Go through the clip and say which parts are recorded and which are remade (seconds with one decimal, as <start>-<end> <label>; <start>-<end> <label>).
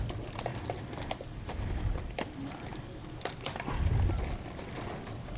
0.0-5.4 recorded